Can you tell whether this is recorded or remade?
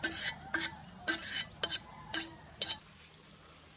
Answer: recorded